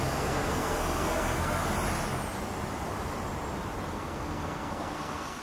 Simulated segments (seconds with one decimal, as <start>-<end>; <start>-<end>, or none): 0.0-1.6; 3.9-5.4